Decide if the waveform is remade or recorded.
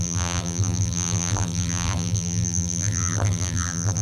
remade